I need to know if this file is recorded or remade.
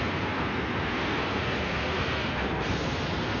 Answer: remade